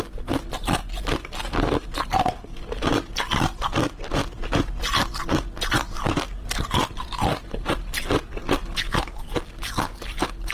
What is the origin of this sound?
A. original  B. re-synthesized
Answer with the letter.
A